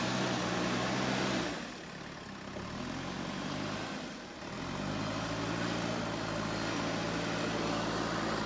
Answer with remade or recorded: recorded